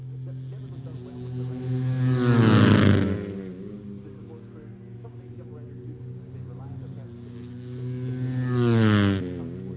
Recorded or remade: recorded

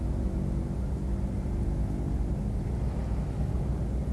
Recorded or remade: recorded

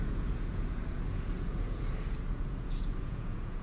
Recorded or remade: remade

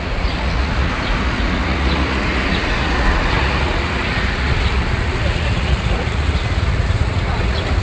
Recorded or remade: remade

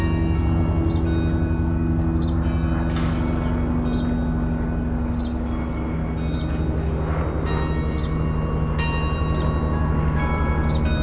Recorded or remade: recorded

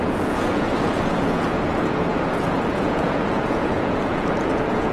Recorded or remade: remade